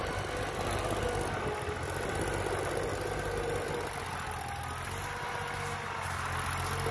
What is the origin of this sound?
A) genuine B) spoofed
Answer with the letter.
A